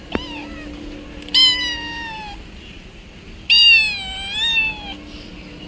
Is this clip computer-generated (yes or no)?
no